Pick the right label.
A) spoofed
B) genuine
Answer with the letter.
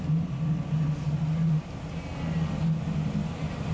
B